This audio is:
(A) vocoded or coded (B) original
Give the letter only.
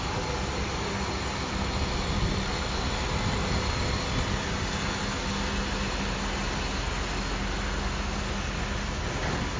B